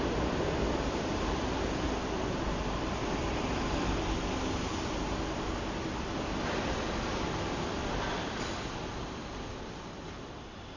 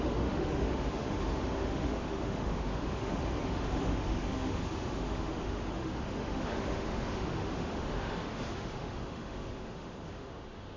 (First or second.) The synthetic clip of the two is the second